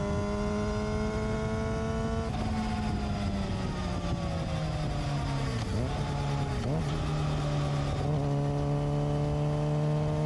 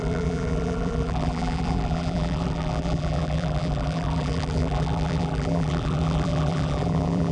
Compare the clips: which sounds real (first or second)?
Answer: first